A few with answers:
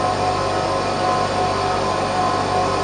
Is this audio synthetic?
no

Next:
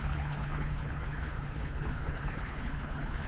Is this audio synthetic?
yes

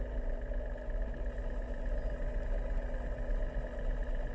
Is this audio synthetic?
no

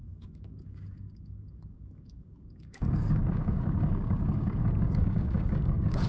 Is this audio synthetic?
yes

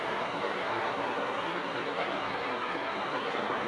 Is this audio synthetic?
yes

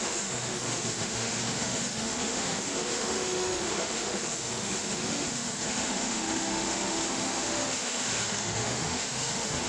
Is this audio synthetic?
yes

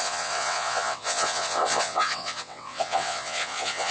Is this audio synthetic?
yes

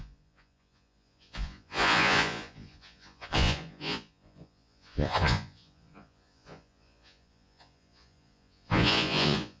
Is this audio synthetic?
yes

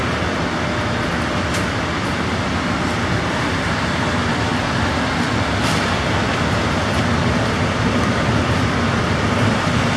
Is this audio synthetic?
no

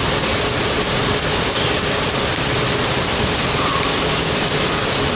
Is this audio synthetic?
no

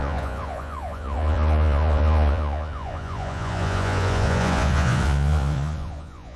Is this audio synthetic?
yes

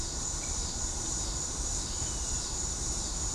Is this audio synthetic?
yes